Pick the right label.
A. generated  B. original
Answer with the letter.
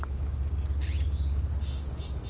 B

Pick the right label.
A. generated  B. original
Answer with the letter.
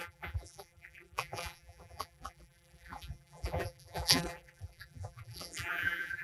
A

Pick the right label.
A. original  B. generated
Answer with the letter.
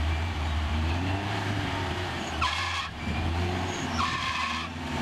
B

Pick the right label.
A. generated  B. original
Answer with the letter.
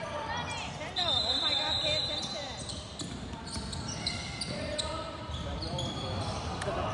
A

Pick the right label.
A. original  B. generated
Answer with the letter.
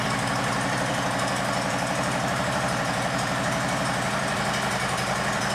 B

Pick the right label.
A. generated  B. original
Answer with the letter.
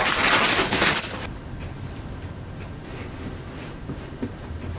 B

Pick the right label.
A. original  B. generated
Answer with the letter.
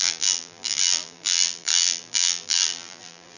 B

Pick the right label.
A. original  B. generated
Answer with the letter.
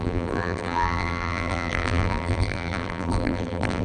B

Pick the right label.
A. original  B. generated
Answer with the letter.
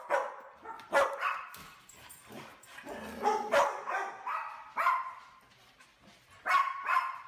B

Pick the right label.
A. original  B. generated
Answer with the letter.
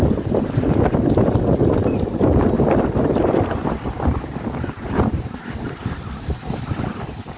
B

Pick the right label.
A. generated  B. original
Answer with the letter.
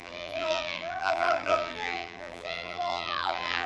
A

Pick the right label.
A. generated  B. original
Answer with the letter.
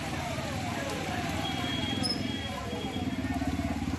A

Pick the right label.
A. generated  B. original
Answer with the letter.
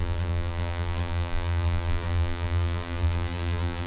A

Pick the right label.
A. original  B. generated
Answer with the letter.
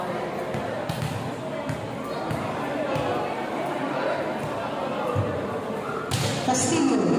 A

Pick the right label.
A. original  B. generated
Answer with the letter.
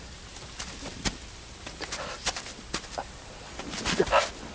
A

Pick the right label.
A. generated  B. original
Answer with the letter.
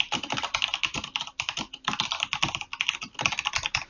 B